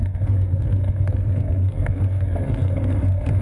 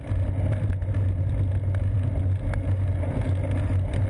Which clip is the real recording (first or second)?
second